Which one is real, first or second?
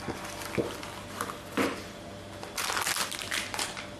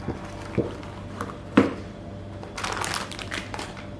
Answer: first